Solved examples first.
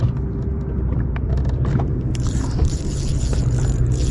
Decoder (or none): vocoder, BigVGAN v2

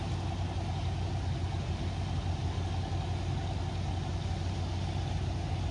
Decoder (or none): none